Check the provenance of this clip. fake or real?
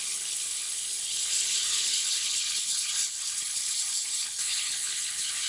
fake